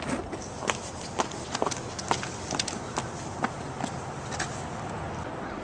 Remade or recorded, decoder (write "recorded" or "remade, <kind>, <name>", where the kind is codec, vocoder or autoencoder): remade, vocoder, BigVGAN v2